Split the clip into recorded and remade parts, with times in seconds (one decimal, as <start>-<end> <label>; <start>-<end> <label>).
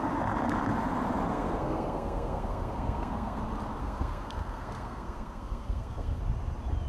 0.0-1.3 recorded; 1.3-3.4 remade; 3.4-3.8 recorded; 3.8-6.2 remade; 6.2-6.9 recorded